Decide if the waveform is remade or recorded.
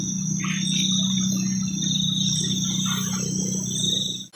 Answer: recorded